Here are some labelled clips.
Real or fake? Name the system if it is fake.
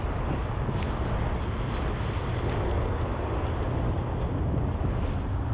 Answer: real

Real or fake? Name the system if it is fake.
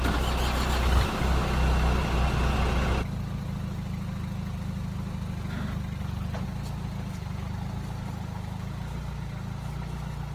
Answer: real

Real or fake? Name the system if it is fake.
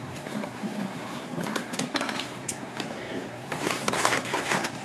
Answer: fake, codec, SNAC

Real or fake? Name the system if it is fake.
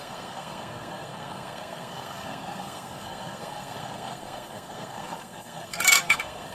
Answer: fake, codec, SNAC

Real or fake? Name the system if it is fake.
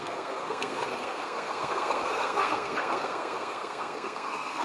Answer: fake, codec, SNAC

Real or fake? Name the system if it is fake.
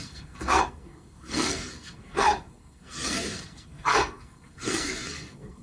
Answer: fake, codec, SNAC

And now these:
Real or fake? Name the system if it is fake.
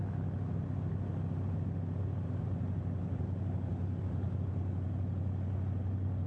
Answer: real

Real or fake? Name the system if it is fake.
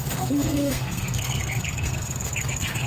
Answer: fake, codec, SNAC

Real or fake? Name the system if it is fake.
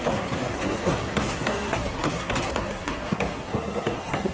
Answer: fake, codec, SNAC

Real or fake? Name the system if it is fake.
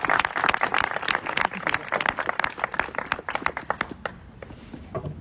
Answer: real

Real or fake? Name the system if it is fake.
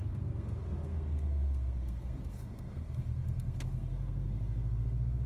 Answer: fake, codec, SNAC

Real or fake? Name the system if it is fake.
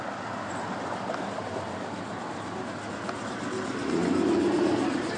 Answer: real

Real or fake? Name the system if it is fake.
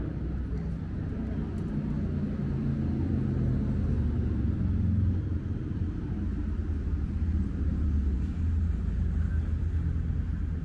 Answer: real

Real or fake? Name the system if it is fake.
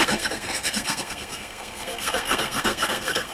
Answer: fake, codec, SNAC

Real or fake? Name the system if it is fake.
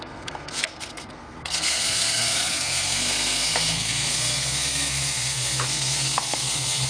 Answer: fake, codec, SNAC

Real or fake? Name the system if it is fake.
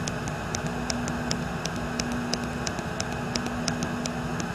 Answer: real